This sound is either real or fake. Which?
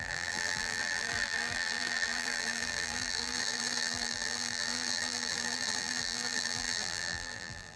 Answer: fake